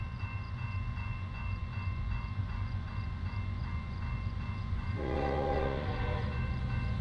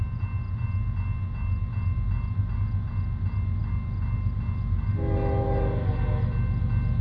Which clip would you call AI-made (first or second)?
first